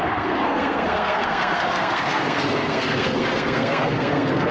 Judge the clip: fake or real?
fake